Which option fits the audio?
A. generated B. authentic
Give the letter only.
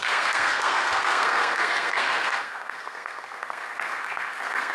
A